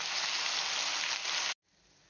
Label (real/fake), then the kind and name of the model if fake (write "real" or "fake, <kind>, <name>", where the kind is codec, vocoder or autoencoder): real